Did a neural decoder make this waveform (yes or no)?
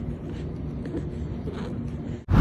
no